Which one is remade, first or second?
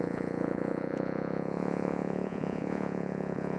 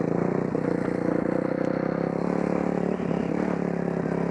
first